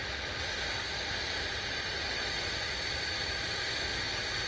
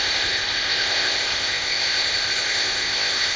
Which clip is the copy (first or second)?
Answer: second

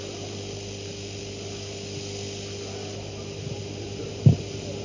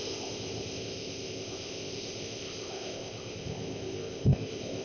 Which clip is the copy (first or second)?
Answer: second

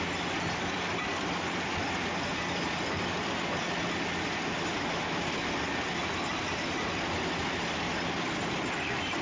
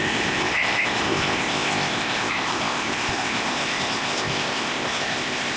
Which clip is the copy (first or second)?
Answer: second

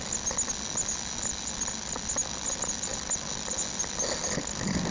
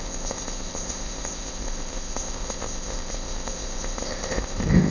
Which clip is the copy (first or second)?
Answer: second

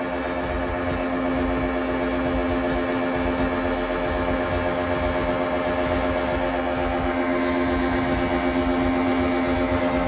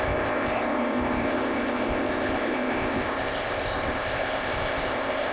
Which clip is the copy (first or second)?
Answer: second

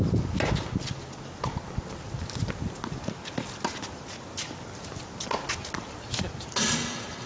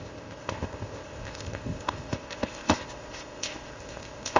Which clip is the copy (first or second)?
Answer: second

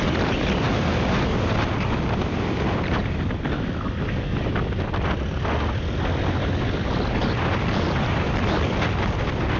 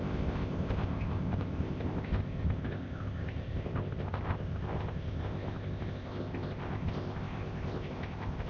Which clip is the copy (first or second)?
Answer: second